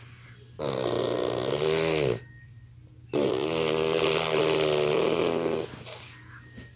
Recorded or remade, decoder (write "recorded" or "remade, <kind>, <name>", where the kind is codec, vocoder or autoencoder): recorded